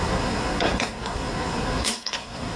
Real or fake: fake